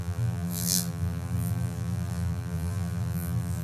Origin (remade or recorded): remade